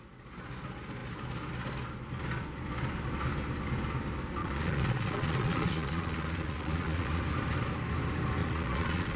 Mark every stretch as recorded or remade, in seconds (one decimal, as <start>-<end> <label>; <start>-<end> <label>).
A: 0.0-4.4 recorded; 4.4-7.2 remade; 7.2-8.4 recorded; 8.4-9.2 remade